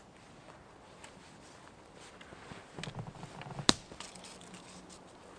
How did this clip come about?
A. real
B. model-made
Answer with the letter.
A